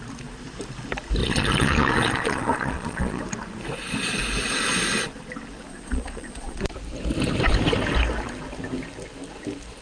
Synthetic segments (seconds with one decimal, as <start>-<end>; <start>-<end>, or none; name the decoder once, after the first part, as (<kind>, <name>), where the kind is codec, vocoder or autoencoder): 1.2-3.2 (vocoder, Vocos); 5.7-6.6